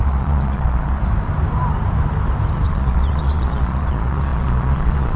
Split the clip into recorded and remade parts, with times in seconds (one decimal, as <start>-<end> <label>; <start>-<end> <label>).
0.0-1.0 remade; 1.0-2.7 recorded; 2.7-5.2 remade